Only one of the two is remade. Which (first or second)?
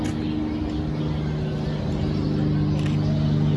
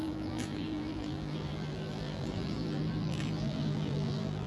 second